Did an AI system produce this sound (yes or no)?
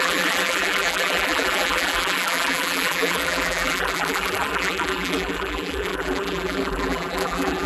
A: yes